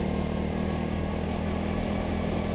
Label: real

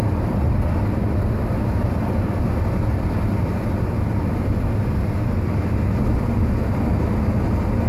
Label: real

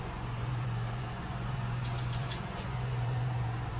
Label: fake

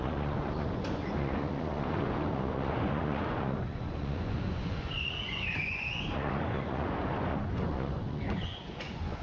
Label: fake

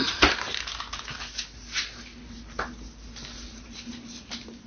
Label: real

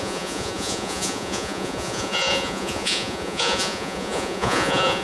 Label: fake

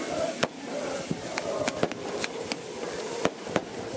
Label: real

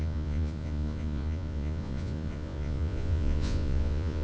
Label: fake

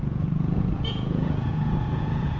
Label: fake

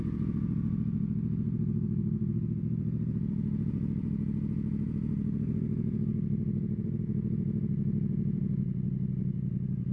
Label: fake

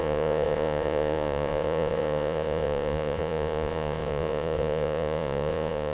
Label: fake